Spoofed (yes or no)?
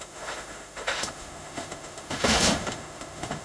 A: yes